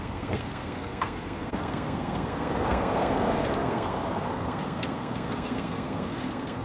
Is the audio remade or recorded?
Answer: remade